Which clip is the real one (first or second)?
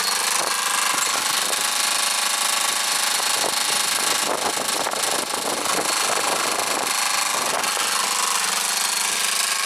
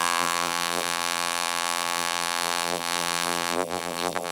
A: first